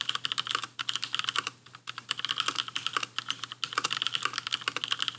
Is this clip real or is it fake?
real